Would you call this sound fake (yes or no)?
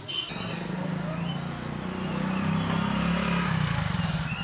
no